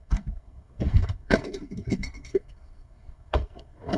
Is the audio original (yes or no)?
no